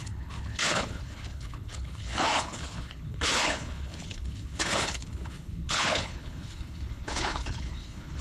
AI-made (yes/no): yes